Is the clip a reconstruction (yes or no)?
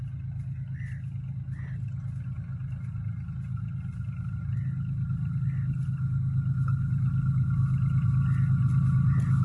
no